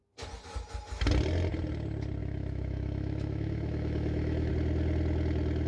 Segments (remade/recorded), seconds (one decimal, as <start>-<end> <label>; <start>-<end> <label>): 0.0-2.2 recorded; 2.2-4.5 remade; 4.5-5.7 recorded